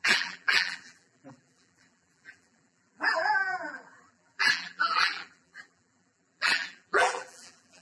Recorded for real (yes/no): no